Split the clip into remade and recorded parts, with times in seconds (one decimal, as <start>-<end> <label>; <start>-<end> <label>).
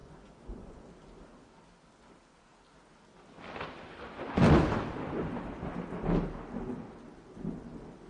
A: 0.0-0.8 remade; 0.8-8.1 recorded